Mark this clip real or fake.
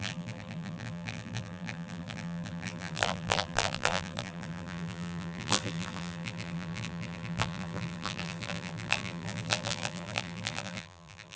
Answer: fake